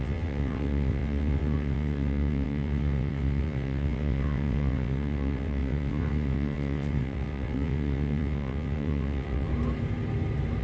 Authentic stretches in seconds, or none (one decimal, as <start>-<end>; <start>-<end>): 9.5-10.6